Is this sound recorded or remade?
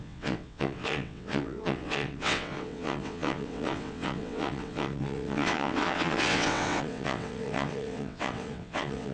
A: remade